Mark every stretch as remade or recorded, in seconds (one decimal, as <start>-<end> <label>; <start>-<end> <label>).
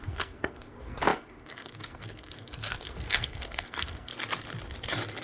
0.0-4.1 remade; 4.1-5.2 recorded